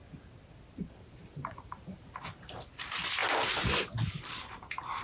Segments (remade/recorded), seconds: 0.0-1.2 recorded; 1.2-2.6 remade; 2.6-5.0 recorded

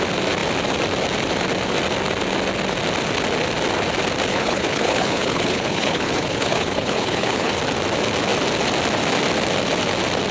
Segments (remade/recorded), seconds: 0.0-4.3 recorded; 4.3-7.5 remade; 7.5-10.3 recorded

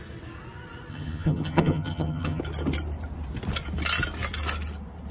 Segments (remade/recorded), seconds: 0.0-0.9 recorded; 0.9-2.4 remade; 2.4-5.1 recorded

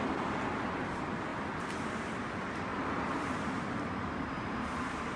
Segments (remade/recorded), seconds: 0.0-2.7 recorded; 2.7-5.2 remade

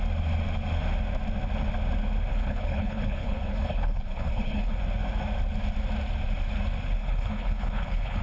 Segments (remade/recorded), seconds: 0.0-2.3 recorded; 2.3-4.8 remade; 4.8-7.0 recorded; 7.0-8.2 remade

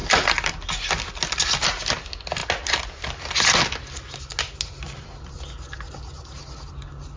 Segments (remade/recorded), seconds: 0.0-7.2 recorded

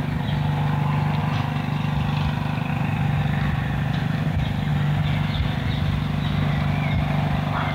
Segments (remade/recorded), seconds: 0.0-1.2 remade; 1.2-2.7 recorded; 2.7-4.7 remade; 4.7-6.5 recorded; 6.5-7.7 remade

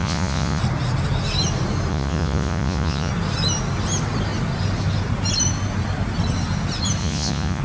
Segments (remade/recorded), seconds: 0.0-0.6 remade; 0.6-1.9 recorded; 1.9-3.1 remade; 3.1-7.0 recorded; 7.0-7.6 remade